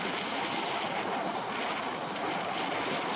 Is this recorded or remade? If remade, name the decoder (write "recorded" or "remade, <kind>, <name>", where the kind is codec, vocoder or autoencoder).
recorded